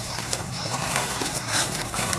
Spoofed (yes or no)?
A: yes